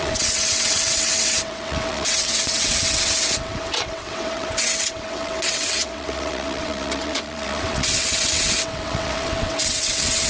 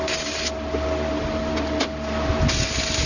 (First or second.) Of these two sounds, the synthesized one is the first